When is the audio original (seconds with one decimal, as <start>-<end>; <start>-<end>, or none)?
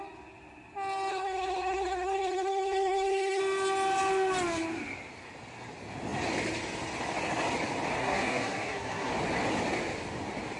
0.0-1.1; 3.4-8.0; 9.1-10.6